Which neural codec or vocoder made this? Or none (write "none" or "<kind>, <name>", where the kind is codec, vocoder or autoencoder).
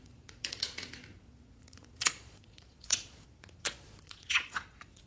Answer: vocoder, Vocos